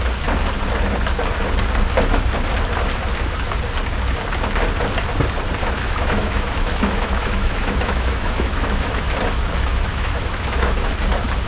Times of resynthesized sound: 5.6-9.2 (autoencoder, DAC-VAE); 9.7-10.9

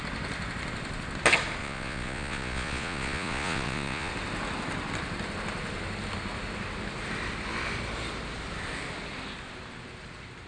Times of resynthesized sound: 1.6-4.1 (vocoder, Vocos)